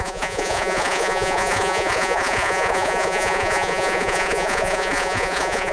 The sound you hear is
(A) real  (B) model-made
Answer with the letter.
B